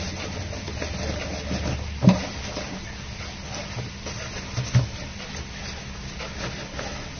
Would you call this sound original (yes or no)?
yes